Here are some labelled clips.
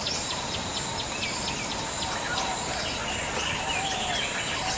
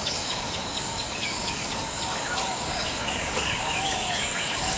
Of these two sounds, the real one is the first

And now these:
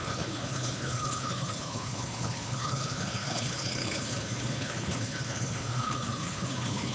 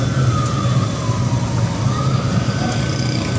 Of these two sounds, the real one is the second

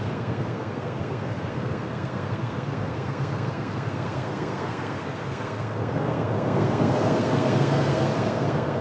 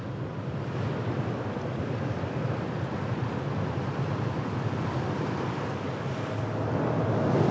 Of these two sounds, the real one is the second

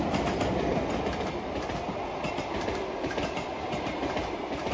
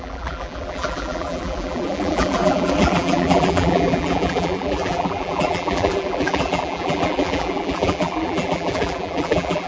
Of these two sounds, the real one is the first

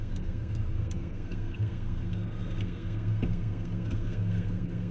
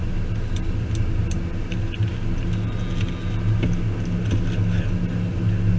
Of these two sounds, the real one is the second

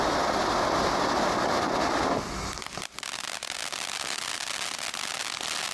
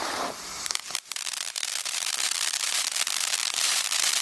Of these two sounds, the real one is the first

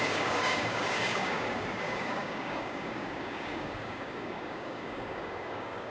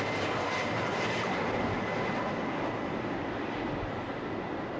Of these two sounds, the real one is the second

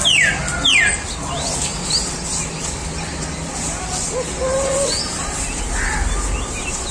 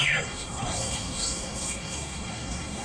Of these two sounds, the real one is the first